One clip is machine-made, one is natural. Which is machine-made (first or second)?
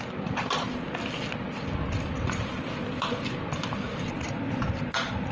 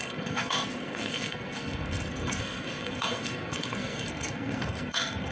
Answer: second